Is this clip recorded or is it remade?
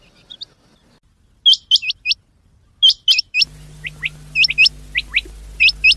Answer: recorded